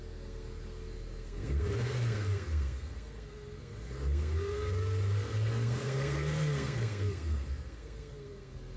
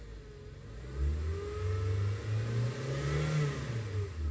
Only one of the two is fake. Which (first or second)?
first